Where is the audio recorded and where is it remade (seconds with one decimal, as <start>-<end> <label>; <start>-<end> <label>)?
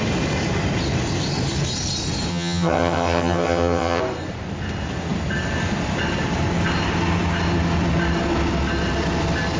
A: 0.0-2.3 recorded; 2.3-4.0 remade; 4.0-9.6 recorded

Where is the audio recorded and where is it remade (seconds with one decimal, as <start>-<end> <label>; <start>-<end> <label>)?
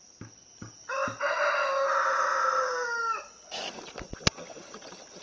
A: 0.0-5.2 recorded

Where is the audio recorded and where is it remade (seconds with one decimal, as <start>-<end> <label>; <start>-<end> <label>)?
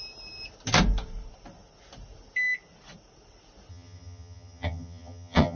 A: 0.0-3.7 recorded; 3.7-5.6 remade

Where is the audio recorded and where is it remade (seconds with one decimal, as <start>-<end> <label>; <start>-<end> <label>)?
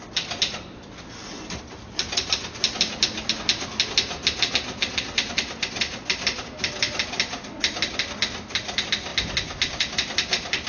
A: 0.0-10.7 recorded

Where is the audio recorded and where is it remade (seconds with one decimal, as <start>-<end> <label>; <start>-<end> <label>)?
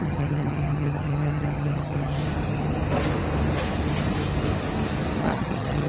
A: 0.0-2.2 remade; 2.2-5.2 recorded; 5.2-5.9 remade